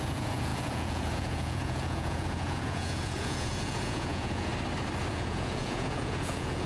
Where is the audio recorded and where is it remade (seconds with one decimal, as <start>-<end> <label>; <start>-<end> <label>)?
0.0-4.5 remade; 4.5-5.1 recorded; 5.1-6.7 remade